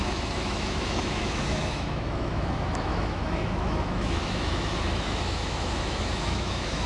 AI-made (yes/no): yes